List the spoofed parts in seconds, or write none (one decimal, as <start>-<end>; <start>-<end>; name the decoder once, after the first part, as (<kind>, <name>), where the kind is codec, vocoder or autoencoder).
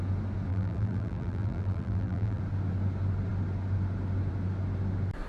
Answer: 0.5-2.4 (vocoder, BigVGAN v2)